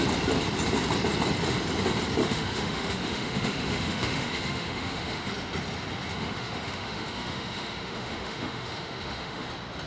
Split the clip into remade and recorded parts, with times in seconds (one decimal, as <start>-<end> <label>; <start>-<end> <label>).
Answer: 0.0-2.2 recorded; 2.2-5.3 remade; 5.3-6.1 recorded; 6.1-9.5 remade; 9.5-9.9 recorded